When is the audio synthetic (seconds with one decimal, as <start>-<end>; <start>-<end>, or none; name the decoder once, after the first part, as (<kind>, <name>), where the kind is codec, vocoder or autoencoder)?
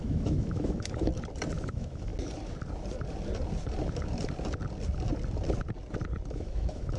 0.0-1.1 (autoencoder, DAC-VAE); 1.6-2.1; 6.3-7.0